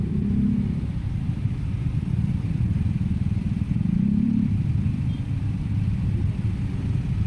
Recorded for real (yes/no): no